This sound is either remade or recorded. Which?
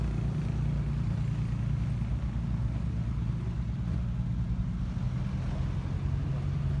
recorded